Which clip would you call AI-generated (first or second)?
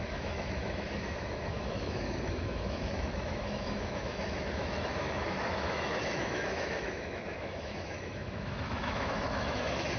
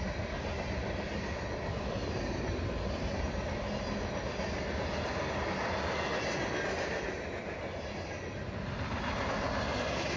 first